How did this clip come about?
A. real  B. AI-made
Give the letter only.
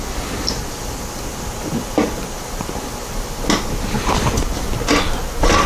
A